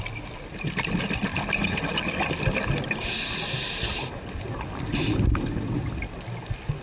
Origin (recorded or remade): recorded